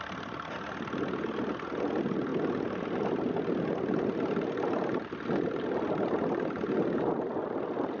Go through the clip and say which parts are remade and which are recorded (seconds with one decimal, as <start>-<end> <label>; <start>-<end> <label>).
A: 0.0-8.0 recorded